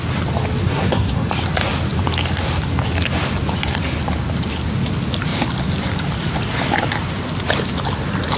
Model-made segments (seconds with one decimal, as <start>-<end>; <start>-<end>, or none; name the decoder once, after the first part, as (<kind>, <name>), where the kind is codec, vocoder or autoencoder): 0.6-1.3 (codec, SNAC)